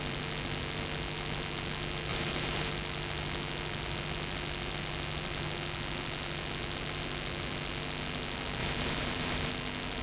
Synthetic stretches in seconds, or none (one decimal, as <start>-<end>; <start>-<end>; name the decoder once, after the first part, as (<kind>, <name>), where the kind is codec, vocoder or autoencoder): 2.1-2.7 (vocoder, BigVGAN v2); 8.6-9.5